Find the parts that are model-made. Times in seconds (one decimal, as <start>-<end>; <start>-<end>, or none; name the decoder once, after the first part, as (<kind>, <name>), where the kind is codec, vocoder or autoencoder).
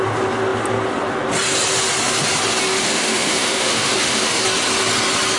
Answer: 2.7-4.4 (autoencoder, DAC-VAE)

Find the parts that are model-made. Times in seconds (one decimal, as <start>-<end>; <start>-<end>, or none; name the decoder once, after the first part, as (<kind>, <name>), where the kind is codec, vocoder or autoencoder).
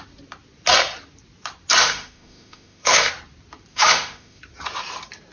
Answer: 1.8-3.1 (autoencoder, DAC-VAE); 3.7-4.4